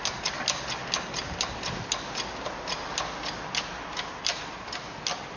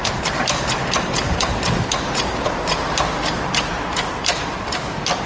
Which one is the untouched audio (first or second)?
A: first